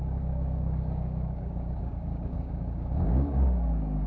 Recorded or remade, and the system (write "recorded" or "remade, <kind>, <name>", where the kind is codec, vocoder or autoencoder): remade, codec, DAC